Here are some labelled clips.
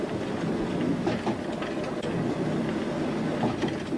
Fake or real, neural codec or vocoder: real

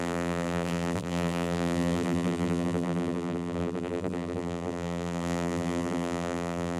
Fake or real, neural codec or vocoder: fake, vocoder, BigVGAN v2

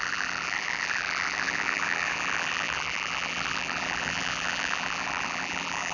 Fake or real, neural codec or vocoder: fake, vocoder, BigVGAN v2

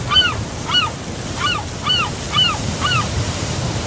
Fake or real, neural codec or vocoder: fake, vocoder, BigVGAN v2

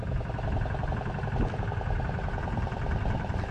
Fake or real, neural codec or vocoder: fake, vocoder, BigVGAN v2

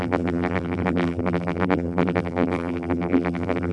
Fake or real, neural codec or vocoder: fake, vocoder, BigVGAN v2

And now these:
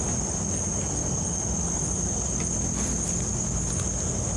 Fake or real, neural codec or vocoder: real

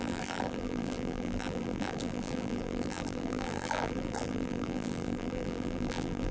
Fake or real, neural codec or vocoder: fake, vocoder, BigVGAN v2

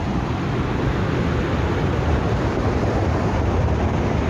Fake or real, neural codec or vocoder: real